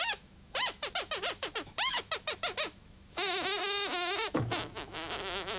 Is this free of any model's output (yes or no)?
no